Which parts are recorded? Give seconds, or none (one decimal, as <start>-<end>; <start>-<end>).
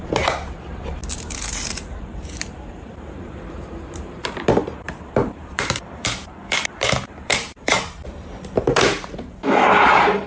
none